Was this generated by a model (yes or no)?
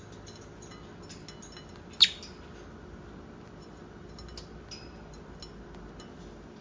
no